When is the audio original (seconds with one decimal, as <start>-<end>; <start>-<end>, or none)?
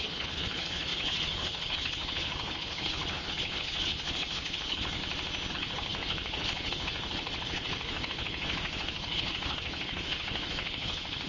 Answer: 5.0-5.5